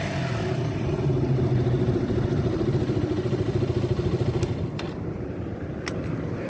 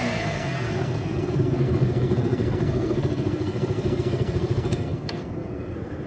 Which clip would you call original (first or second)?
first